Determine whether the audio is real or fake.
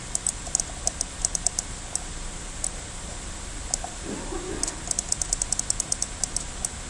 real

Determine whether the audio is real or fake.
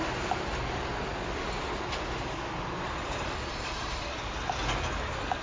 real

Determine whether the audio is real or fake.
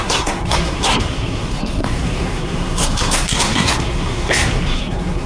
fake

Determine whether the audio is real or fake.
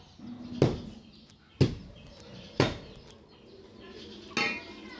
real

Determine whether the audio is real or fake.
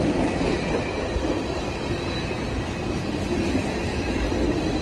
real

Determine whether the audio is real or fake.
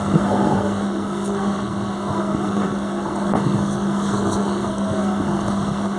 fake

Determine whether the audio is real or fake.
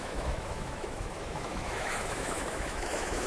fake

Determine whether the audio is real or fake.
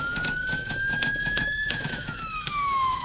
fake